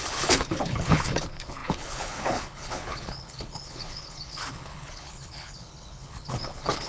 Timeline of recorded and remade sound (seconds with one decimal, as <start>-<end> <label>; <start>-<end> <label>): 0.0-6.9 remade